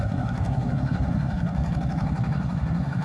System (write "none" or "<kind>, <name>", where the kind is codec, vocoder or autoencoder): codec, SNAC